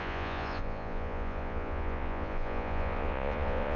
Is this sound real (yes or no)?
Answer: no